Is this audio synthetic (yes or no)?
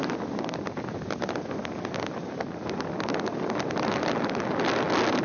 no